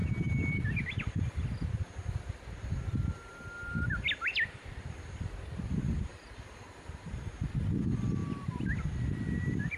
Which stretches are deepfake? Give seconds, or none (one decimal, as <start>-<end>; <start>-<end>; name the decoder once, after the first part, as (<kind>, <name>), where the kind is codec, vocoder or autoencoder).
6.1-6.8 (vocoder, BigVGAN v2)